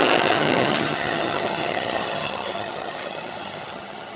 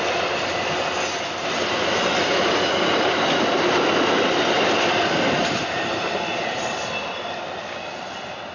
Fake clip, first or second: first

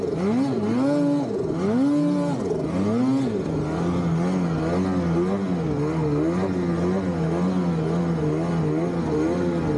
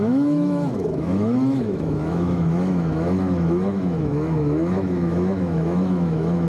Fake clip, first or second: second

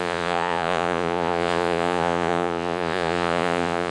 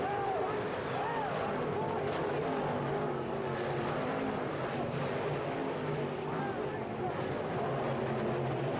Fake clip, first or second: first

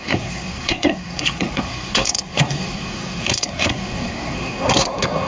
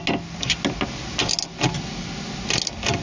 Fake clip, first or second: first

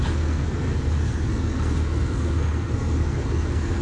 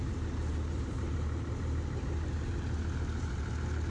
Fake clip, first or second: first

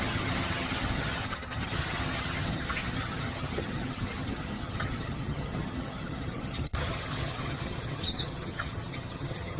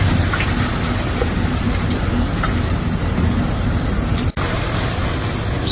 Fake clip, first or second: first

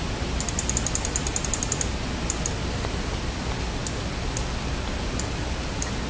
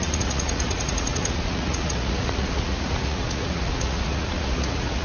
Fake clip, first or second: second